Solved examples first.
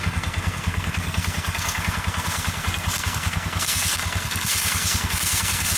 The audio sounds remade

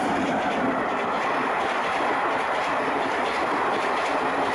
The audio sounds recorded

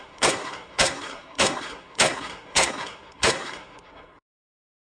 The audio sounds remade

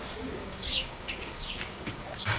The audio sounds remade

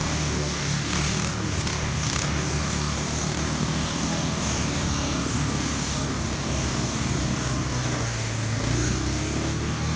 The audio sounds remade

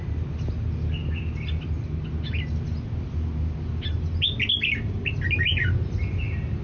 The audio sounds recorded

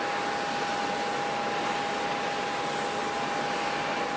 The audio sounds recorded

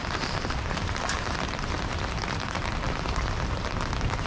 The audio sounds recorded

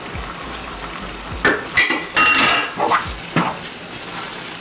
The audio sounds recorded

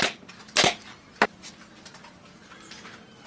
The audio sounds recorded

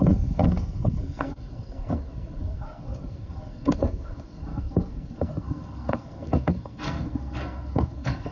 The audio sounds remade